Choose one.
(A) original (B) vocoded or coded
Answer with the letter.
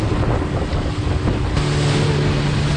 A